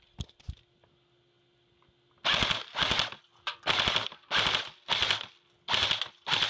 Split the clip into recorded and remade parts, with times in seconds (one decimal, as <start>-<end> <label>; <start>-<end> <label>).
0.0-3.3 recorded; 3.3-4.4 remade; 4.4-6.5 recorded